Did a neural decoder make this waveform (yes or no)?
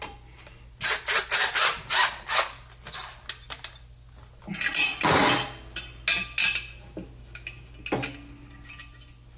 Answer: no